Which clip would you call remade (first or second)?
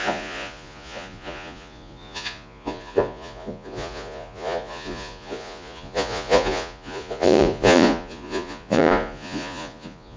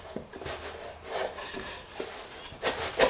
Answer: first